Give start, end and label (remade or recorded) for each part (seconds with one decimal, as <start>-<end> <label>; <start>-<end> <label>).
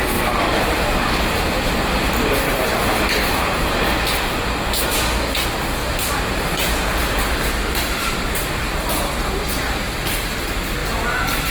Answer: 0.0-3.2 recorded; 3.2-3.9 remade; 3.9-5.8 recorded; 5.8-8.8 remade; 8.8-10.8 recorded; 10.8-11.5 remade